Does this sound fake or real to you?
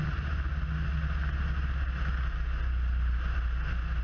real